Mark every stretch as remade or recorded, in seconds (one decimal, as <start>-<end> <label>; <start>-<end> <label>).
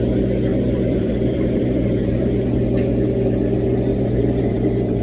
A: 0.0-0.5 recorded; 0.5-2.3 remade; 2.3-3.9 recorded; 3.9-5.0 remade